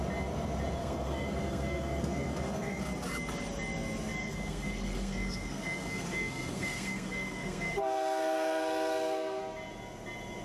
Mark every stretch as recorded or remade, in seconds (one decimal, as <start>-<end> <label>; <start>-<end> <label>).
0.0-0.8 recorded; 0.8-2.8 remade; 2.8-4.2 recorded; 4.2-9.4 remade; 9.4-10.4 recorded